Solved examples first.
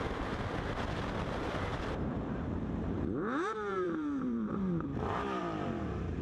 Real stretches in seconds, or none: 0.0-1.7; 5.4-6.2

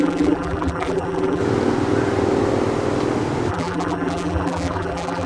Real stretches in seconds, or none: 1.4-3.5

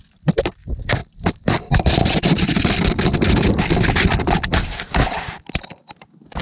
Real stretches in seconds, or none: none